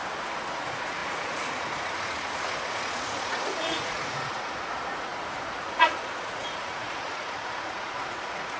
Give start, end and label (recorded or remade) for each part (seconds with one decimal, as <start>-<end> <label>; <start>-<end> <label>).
0.0-0.5 recorded; 0.5-8.6 remade